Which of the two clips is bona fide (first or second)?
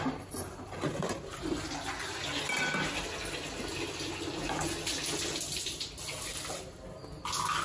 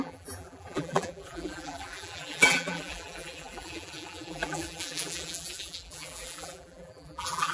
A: first